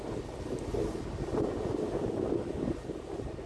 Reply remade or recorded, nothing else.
recorded